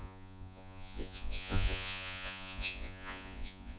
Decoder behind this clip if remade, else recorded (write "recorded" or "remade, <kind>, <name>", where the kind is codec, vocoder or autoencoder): remade, vocoder, Vocos